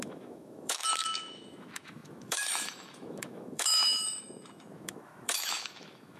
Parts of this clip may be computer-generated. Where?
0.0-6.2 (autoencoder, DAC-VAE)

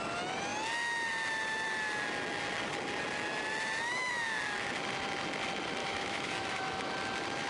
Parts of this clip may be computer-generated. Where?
5.8-6.9 (autoencoder, DAC-VAE)

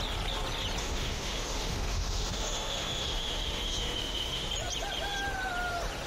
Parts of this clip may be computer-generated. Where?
0.8-4.5 (autoencoder, DAC-VAE)

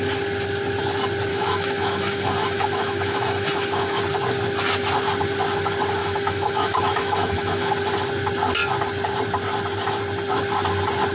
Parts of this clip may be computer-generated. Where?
1.3-4.0 (autoencoder, DAC-VAE); 6.0-7.7